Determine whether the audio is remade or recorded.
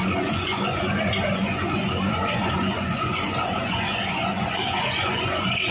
remade